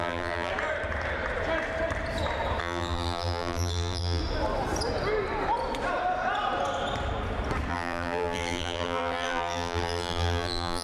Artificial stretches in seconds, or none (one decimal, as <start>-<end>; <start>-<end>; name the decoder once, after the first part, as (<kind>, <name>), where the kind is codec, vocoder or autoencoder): 0.0-0.5 (vocoder, BigVGAN v2); 2.6-4.2; 7.7-10.8